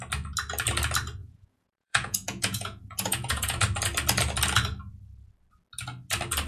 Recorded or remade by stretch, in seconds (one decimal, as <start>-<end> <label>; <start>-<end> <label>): 0.0-1.2 recorded; 1.2-3.6 remade; 3.6-6.5 recorded